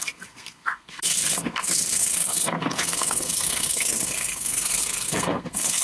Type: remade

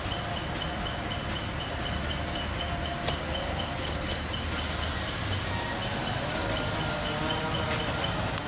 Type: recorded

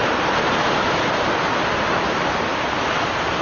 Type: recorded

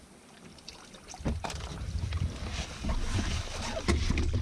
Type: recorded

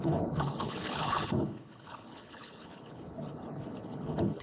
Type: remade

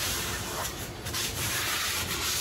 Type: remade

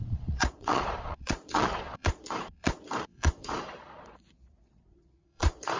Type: remade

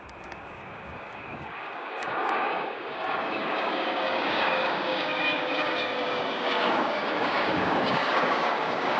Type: remade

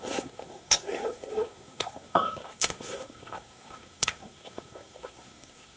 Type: remade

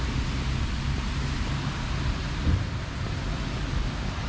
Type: recorded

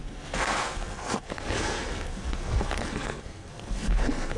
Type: remade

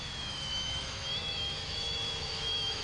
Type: remade